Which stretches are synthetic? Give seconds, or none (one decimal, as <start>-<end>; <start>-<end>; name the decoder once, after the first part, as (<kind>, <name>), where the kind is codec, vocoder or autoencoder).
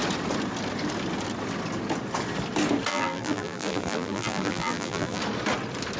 2.9-5.2 (vocoder, BigVGAN v2)